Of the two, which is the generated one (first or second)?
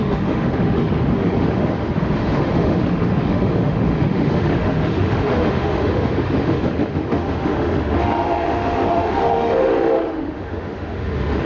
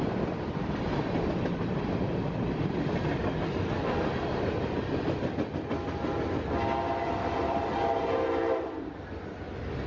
first